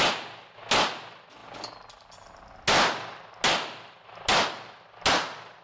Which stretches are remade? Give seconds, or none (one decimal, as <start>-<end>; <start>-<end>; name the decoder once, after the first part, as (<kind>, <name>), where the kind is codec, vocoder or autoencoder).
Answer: none

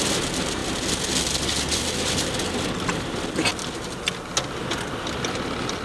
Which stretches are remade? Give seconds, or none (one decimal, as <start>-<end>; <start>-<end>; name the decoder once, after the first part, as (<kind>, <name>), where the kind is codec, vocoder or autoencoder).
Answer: none

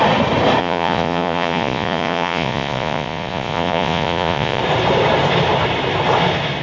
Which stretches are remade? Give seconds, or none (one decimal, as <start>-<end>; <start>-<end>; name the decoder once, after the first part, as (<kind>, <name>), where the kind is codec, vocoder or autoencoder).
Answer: 0.6-4.6 (vocoder, Vocos)

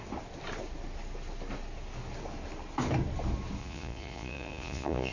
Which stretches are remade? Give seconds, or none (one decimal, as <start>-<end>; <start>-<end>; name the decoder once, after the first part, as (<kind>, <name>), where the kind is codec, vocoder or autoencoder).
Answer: 3.6-5.1 (vocoder, Vocos)

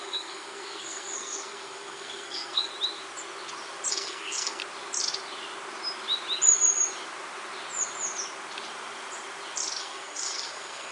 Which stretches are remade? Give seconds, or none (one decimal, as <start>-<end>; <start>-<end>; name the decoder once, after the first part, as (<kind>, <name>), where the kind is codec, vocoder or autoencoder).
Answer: 0.0-2.7 (codec, SNAC); 3.9-4.6; 9.8-10.9

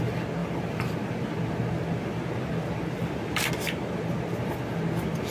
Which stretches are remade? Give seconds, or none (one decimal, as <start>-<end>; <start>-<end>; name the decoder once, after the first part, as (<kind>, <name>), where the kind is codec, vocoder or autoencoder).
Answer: 0.4-3.5 (vocoder, BigVGAN v2)

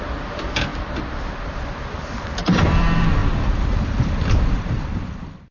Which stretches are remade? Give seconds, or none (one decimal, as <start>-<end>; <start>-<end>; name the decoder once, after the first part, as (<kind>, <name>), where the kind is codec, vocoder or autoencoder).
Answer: none